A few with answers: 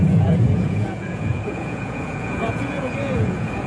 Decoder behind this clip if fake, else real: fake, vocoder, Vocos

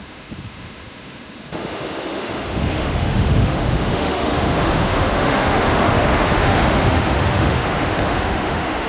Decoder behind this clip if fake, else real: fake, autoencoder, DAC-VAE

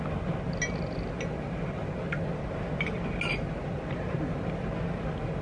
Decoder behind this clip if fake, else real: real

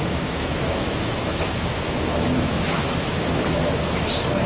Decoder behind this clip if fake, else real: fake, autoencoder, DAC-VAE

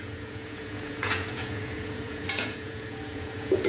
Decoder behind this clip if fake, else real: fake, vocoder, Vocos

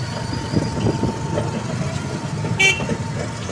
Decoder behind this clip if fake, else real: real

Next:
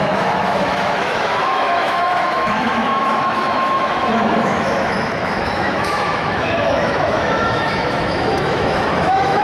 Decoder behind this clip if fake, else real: fake, autoencoder, DAC-VAE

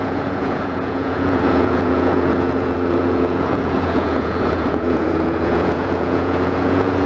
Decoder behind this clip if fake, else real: fake, vocoder, Vocos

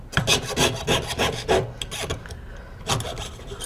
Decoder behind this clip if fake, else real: real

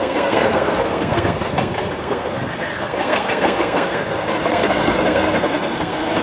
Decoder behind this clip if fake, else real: fake, codec, SNAC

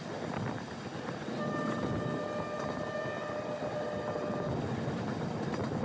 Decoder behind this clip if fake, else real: real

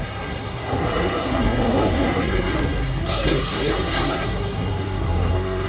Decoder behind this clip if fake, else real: fake, codec, SNAC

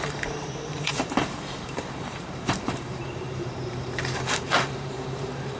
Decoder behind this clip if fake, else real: fake, vocoder, BigVGAN v2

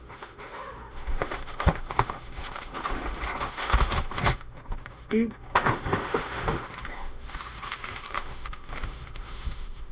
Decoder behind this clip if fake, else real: fake, autoencoder, DAC-VAE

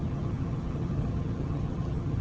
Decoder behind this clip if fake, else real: fake, vocoder, HiFi-GAN